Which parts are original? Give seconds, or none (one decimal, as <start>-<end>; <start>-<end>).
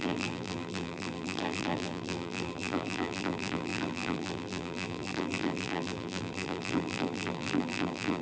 none